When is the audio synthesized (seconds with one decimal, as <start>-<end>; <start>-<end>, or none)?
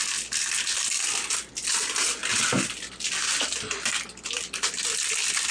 none